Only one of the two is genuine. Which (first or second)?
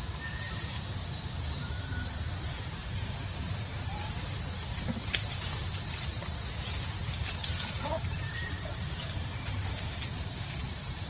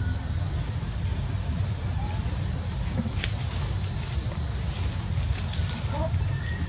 second